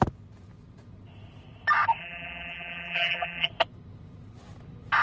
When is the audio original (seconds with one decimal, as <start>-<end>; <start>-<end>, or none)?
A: 0.0-2.0; 3.5-5.0

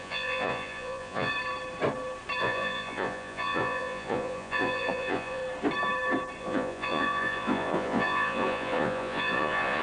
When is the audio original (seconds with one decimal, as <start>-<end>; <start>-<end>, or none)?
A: 1.3-2.4; 5.4-6.4